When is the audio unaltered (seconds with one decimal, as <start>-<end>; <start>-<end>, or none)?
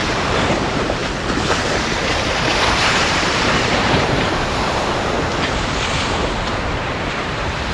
0.0-0.6; 1.0-1.5; 5.3-6.5